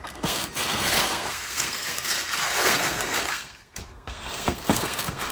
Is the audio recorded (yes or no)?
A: no